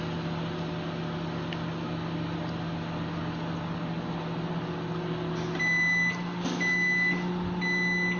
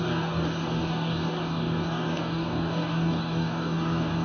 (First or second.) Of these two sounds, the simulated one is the second